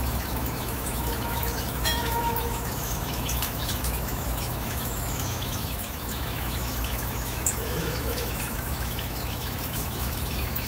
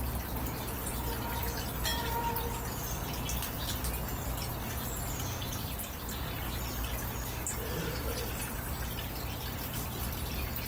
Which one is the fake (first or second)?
first